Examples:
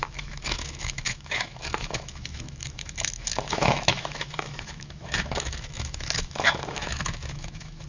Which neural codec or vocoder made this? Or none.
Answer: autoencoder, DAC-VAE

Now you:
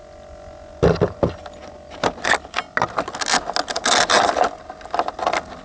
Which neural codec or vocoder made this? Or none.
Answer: none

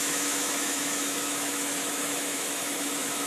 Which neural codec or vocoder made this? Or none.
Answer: autoencoder, DAC-VAE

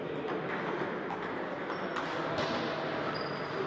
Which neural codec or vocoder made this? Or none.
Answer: none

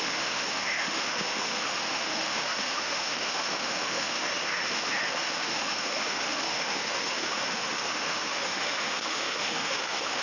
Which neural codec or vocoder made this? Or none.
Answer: autoencoder, DAC-VAE